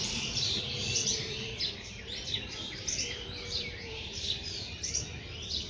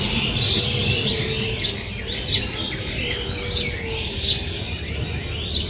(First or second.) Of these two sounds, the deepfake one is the first